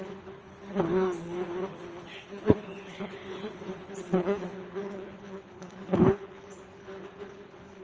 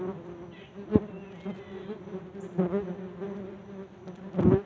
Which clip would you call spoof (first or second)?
first